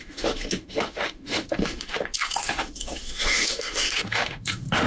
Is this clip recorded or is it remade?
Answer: remade